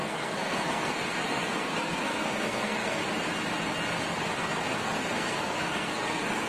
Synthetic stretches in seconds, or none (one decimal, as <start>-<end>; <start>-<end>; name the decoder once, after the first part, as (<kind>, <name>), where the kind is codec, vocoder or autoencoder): 0.0-3.0 (codec, SNAC); 4.4-6.5